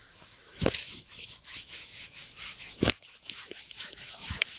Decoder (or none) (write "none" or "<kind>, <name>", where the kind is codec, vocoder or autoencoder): autoencoder, DAC-VAE